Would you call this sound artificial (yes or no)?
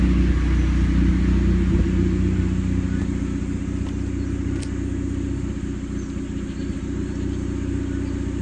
no